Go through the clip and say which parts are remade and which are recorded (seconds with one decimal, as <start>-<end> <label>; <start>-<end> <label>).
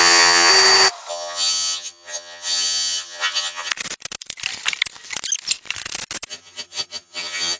0.0-0.5 remade; 0.5-1.1 recorded; 1.1-3.7 remade; 3.7-6.3 recorded; 6.3-7.6 remade